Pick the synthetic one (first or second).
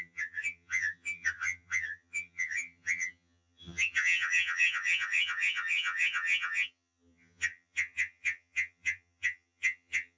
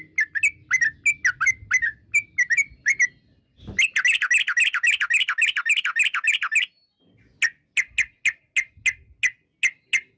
first